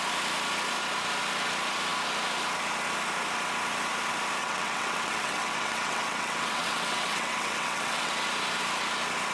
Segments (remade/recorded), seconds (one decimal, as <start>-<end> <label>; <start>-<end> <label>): 0.0-4.4 recorded; 4.4-8.1 remade; 8.1-9.3 recorded